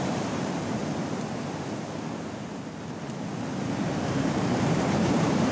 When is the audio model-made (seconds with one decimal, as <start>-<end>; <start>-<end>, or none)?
0.0-0.8; 4.1-5.5